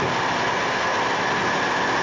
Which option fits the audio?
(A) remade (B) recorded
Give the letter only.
B